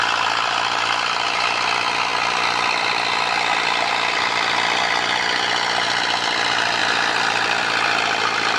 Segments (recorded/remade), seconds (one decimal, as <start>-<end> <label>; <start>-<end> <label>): 0.0-2.1 recorded; 2.1-4.9 remade; 4.9-6.8 recorded; 6.8-7.6 remade; 7.6-8.6 recorded